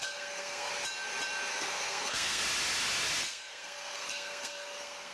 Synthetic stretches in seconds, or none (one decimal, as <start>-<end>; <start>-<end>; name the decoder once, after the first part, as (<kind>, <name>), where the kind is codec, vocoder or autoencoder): 0.0-0.7 (codec, SNAC); 1.5-2.4; 3.2-5.1